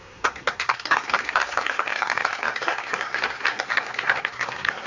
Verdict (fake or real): fake